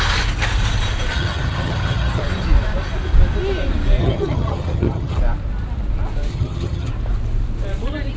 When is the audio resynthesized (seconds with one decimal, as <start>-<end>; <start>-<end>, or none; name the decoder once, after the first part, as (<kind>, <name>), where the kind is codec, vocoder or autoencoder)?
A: 1.1-2.2 (vocoder, HiFi-GAN); 4.0-5.2; 6.3-6.9